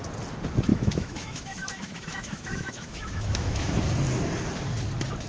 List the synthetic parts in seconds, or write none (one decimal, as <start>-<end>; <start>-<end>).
0.7-3.9